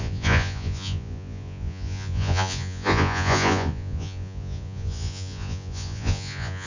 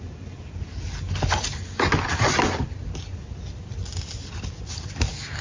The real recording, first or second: second